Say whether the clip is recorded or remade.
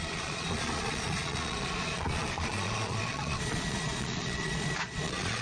remade